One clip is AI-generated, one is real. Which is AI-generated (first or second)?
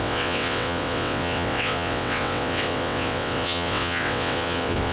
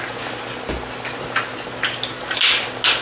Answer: first